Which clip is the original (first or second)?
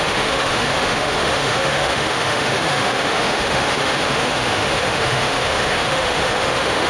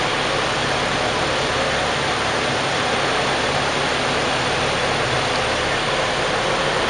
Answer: second